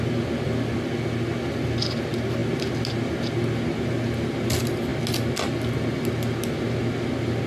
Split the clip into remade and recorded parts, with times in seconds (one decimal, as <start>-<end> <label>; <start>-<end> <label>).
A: 0.0-7.5 recorded